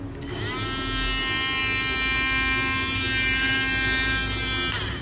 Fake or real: real